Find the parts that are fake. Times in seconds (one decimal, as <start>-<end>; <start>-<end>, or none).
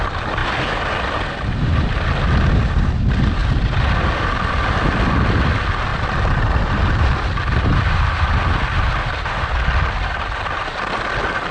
3.4-4.2; 5.9-8.3